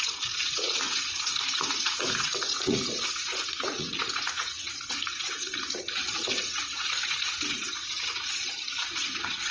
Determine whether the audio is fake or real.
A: fake